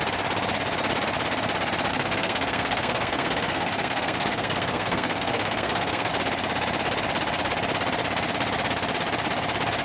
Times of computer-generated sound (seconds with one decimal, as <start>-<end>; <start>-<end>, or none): 1.9-6.1